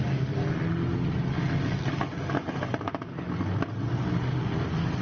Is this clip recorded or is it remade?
recorded